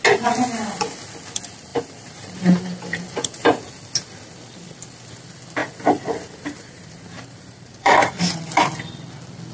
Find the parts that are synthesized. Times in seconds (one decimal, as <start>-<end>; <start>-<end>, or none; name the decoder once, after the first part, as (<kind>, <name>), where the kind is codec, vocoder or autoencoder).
1.7-3.7 (vocoder, BigVGAN v2); 5.6-8.3